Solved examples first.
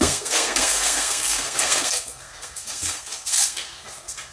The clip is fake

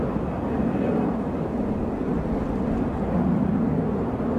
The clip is real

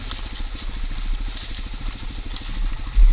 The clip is real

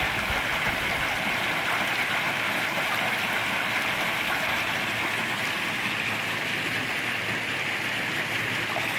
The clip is real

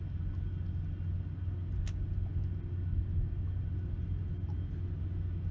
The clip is real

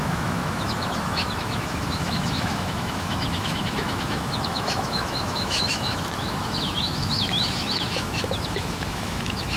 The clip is fake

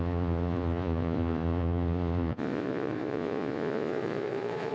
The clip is fake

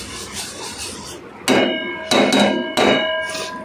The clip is real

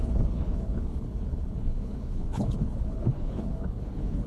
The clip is fake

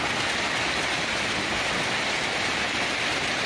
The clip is real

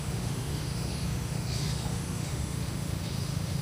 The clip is fake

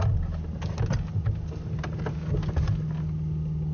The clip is real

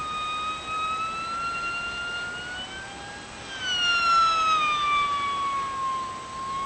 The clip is real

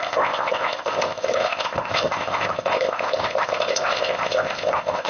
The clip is fake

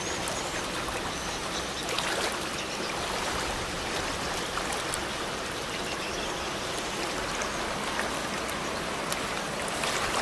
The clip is real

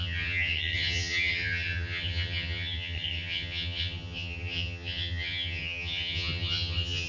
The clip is fake